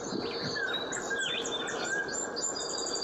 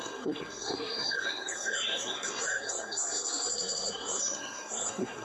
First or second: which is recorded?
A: first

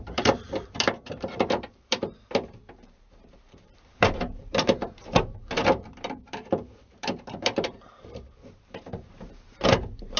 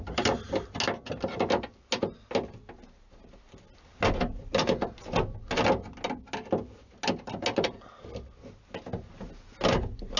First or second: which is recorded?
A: second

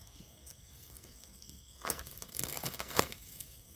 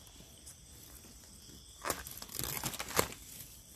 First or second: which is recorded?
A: second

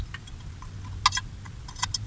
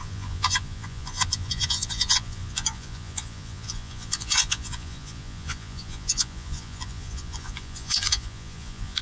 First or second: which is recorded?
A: first